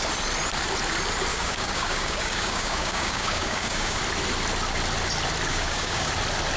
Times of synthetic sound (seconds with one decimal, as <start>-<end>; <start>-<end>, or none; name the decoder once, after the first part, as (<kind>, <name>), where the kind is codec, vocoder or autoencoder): 1.3-4.0 (codec, DAC); 5.5-6.1